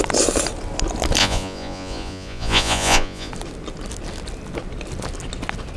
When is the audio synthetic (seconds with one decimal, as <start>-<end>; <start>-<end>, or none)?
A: 1.2-3.3